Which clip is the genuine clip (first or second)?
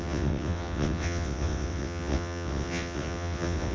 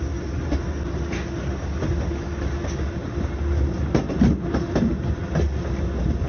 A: second